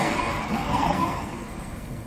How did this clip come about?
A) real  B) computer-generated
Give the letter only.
B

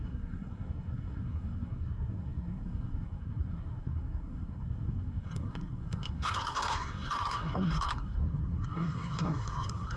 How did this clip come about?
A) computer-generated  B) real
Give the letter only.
A